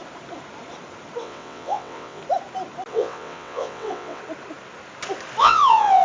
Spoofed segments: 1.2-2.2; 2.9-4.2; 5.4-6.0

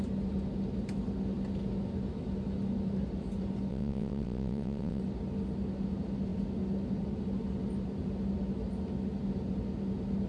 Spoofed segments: 3.7-5.0